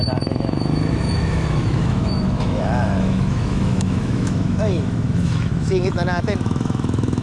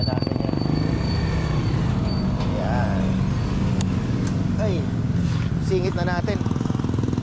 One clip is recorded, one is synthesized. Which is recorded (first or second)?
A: second